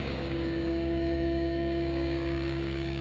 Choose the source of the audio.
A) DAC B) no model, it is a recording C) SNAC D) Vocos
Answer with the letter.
A